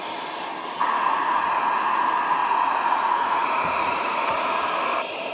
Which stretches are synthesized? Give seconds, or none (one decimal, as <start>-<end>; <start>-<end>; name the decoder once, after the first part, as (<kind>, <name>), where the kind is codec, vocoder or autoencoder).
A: 0.8-1.5 (vocoder, Vocos); 2.4-4.6